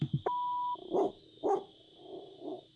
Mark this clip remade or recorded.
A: recorded